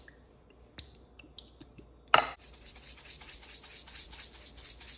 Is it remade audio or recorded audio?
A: recorded